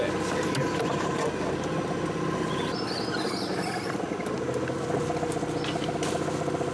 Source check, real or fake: real